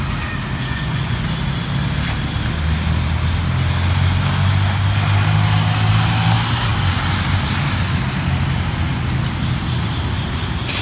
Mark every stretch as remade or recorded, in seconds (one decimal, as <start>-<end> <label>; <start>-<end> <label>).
0.0-0.6 recorded; 0.6-1.2 remade; 1.2-10.8 recorded